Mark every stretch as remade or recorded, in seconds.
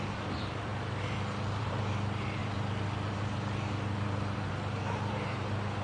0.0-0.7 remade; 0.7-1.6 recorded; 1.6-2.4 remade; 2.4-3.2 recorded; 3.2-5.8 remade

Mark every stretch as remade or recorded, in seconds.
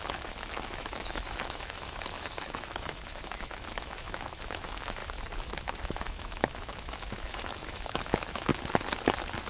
0.0-5.0 remade; 5.0-5.6 recorded; 5.6-8.5 remade; 8.5-9.5 recorded